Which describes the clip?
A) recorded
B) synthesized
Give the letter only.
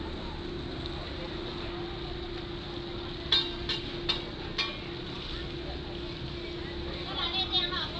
A